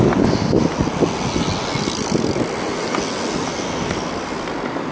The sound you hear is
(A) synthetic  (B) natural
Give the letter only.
B